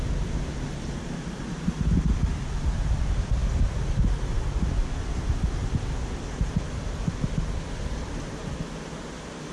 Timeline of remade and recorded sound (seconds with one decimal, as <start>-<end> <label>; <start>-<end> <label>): 0.0-5.6 remade; 5.6-6.3 recorded; 6.3-9.5 remade